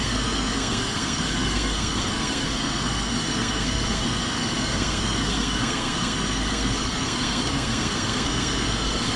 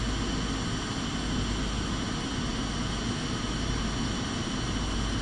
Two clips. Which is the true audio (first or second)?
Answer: second